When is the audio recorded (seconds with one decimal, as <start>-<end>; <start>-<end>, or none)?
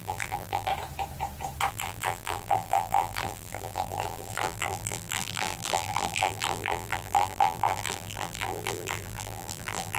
0.7-1.7